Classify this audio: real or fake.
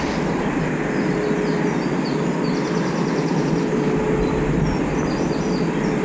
real